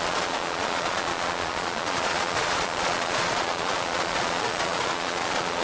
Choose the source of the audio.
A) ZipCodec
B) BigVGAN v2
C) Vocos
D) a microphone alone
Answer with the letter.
C